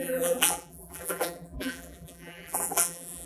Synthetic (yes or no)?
yes